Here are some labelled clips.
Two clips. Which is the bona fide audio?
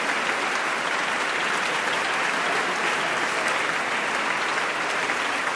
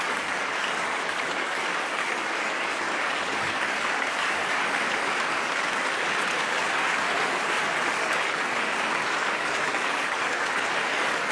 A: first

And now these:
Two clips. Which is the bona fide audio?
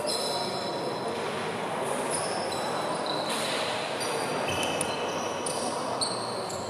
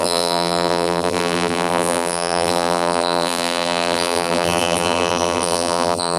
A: first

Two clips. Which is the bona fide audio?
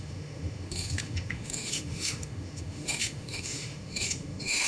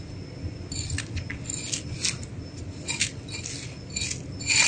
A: second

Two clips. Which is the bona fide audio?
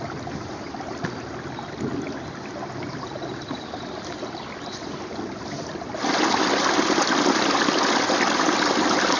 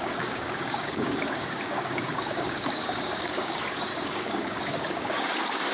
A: first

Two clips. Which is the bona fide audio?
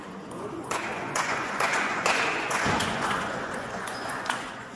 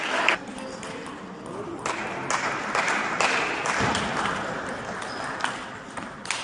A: second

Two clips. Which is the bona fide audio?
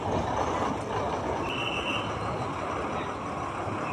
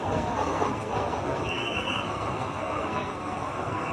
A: first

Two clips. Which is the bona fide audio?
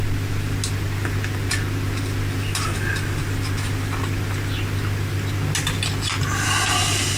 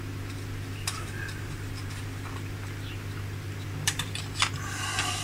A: first